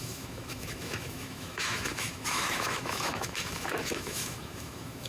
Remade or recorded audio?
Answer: remade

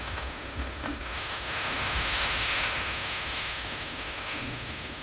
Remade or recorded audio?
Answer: remade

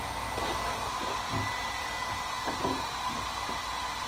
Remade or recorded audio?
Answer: recorded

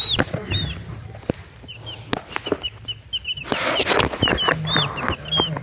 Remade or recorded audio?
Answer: recorded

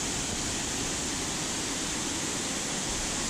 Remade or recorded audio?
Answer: recorded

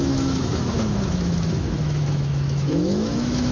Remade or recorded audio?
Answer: remade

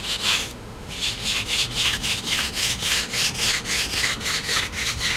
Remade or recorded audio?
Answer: remade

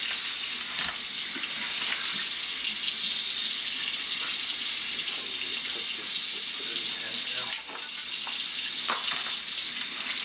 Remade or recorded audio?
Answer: recorded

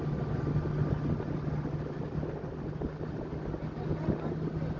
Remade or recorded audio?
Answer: recorded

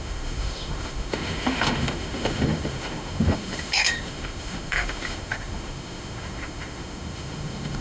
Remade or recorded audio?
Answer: remade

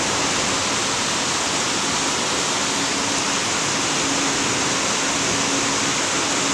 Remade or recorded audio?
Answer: recorded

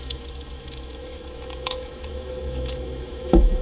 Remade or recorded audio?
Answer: remade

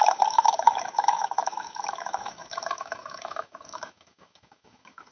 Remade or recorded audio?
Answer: remade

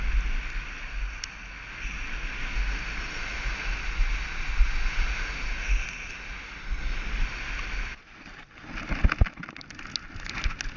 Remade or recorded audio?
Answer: recorded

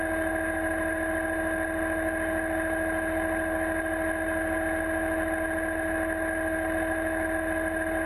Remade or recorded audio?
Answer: recorded